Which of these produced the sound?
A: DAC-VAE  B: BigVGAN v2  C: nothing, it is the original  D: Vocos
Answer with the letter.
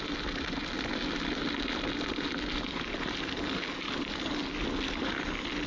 C